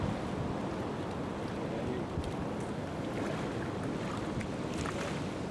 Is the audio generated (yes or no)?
no